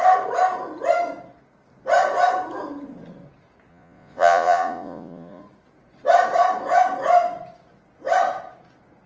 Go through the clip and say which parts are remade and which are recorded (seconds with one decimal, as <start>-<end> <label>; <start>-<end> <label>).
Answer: 0.0-3.7 recorded; 3.7-5.4 remade; 5.4-9.1 recorded